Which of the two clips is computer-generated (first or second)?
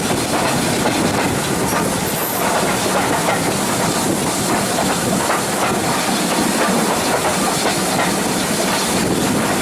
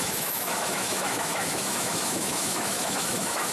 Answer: second